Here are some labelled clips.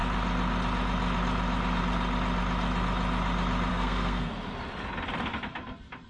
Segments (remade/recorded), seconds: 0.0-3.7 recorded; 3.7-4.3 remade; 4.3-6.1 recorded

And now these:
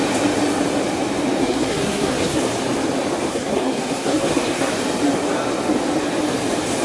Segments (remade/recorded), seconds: 0.0-1.4 recorded; 1.4-2.4 remade; 2.4-3.3 recorded; 3.3-4.7 remade; 4.7-6.8 recorded

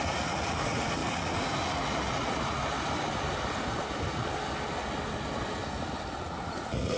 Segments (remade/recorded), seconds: 0.0-2.6 remade; 2.6-6.2 recorded; 6.2-7.0 remade

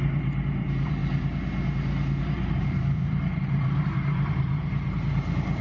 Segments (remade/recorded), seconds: 0.0-1.0 remade; 1.0-2.2 recorded; 2.2-5.6 remade